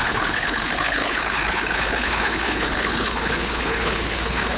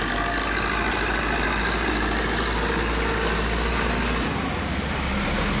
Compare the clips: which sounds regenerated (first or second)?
first